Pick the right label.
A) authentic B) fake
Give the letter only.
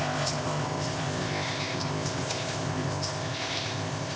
B